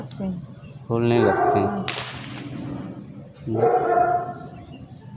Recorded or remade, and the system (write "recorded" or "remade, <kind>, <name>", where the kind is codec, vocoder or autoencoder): recorded